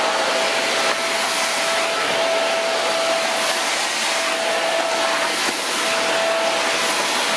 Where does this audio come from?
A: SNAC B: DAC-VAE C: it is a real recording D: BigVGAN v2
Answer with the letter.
C